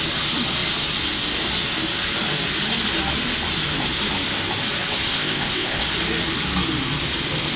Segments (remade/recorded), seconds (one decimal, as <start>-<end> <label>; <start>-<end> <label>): 0.0-5.1 recorded; 5.1-5.8 remade; 5.8-7.6 recorded